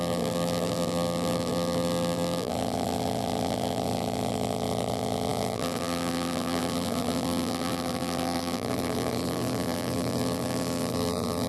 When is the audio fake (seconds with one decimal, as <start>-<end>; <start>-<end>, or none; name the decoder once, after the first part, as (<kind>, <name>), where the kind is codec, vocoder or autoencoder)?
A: 0.0-11.5 (vocoder, BigVGAN v2)